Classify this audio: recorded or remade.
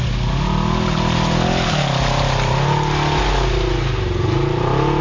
recorded